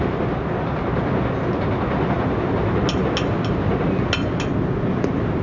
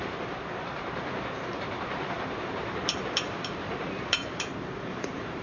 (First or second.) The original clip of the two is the first